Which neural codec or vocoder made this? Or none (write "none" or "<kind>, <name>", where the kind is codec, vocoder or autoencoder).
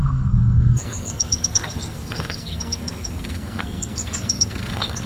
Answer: codec, SNAC